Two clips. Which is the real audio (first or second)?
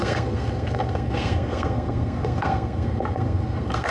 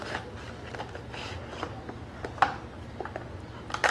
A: second